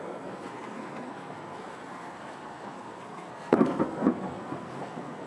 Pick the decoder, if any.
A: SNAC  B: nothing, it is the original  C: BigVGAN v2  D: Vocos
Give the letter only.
A